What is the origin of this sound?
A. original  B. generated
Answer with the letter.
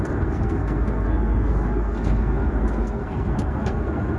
B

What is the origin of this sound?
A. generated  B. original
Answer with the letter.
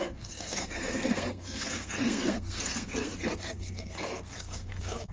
A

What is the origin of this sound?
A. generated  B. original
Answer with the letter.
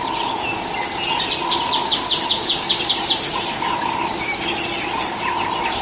B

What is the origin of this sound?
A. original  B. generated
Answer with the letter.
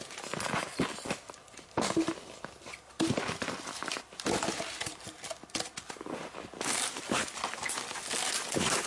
A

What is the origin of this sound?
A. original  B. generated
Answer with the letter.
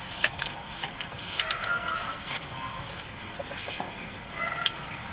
B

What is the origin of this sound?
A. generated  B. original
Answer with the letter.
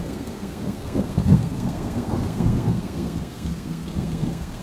A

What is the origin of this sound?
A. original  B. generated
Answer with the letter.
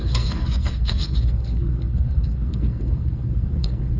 B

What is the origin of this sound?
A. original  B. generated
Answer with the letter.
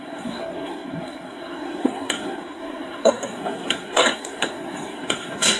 B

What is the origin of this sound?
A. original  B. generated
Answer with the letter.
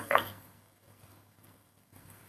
B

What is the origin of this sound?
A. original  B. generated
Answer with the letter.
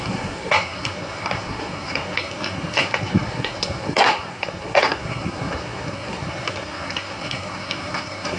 B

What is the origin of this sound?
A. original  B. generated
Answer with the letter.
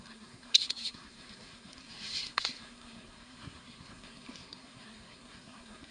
B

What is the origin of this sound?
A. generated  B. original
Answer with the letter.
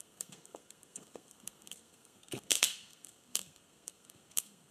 A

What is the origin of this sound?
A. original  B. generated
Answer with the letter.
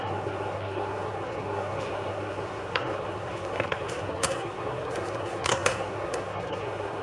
B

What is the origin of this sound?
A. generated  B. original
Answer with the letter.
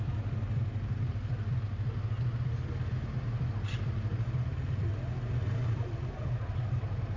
B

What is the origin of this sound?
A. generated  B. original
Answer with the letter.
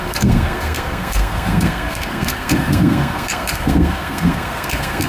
A